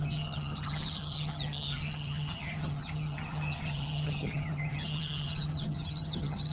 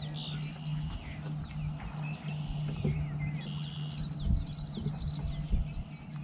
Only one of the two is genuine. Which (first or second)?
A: second